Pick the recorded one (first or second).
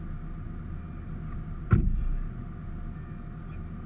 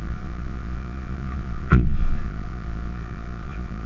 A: first